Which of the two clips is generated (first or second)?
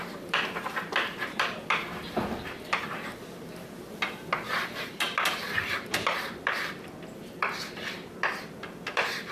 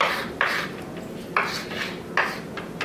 first